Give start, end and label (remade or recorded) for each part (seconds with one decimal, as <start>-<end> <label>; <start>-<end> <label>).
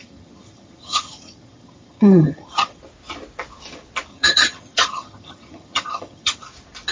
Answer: 0.0-2.8 remade; 2.8-4.1 recorded; 4.1-6.4 remade; 6.4-6.9 recorded